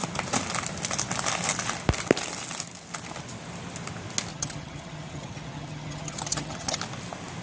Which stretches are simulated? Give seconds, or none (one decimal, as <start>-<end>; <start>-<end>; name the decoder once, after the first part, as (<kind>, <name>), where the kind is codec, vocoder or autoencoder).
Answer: 4.3-6.8 (vocoder, HiFi-GAN)